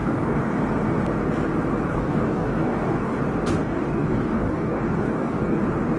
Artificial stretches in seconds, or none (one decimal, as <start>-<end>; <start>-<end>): 0.0-0.6; 1.9-3.2; 3.6-5.6